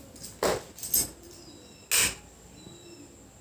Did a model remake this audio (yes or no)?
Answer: no